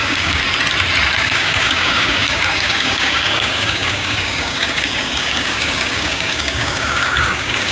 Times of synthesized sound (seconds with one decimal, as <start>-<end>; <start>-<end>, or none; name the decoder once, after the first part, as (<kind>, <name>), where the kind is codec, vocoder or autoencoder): 0.0-0.4 (codec, DAC); 1.2-7.7